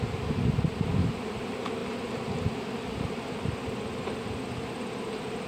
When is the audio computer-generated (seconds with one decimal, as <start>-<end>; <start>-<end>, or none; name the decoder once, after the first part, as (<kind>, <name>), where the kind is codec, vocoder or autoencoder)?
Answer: none

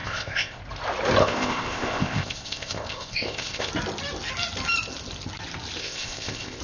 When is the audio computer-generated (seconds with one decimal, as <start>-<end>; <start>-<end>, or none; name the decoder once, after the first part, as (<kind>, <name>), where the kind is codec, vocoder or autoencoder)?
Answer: 0.0-0.6 (codec, ZipCodec); 1.2-3.7; 5.8-6.6

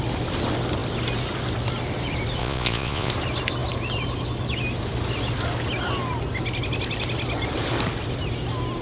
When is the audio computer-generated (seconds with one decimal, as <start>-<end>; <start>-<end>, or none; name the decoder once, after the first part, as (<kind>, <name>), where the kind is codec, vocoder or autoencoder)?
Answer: 2.4-3.1 (vocoder, Vocos)

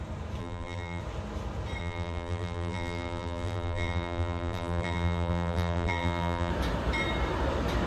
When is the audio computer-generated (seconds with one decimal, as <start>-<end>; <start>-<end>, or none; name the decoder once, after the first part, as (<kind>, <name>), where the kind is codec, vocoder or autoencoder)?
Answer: 0.4-1.0 (vocoder, BigVGAN v2); 1.8-6.5